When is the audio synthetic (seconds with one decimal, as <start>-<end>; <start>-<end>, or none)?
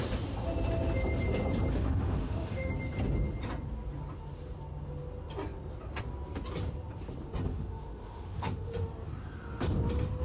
1.7-2.7; 7.5-8.7